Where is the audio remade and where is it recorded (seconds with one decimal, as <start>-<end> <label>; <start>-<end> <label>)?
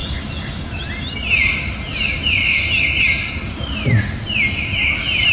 0.0-5.3 recorded